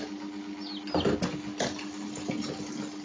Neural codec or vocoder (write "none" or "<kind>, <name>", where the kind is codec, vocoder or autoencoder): none